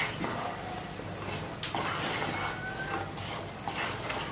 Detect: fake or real real